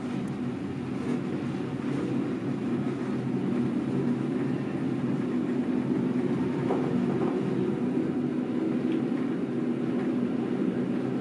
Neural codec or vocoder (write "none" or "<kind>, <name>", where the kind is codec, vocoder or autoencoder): none